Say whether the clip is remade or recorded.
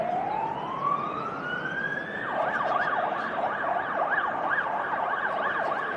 recorded